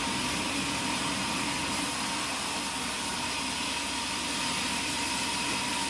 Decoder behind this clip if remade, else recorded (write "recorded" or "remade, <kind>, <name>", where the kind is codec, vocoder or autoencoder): recorded